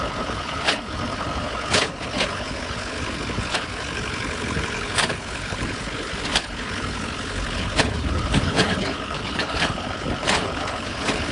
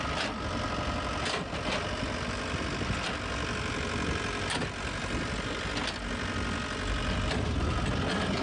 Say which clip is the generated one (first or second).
first